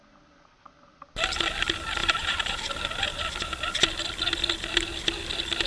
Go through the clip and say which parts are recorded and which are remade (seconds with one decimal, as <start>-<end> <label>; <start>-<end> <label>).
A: 0.0-2.0 recorded; 2.0-2.6 remade; 2.6-5.7 recorded